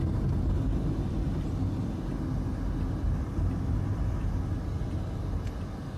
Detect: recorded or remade recorded